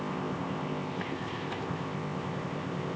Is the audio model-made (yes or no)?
yes